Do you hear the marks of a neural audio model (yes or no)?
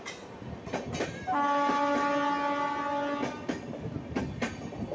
no